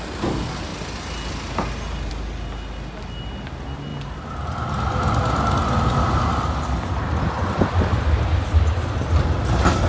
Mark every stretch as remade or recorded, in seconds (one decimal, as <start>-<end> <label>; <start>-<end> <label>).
0.0-9.9 recorded